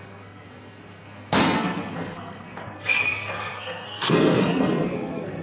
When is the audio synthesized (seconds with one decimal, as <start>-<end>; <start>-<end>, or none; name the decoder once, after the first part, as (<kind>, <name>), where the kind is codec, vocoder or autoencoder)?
0.0-5.4 (codec, SNAC)